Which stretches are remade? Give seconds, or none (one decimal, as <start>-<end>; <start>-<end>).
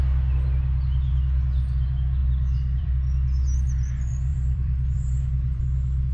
2.2-2.9; 4.3-5.6